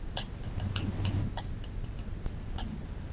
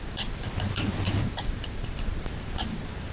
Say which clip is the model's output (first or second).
second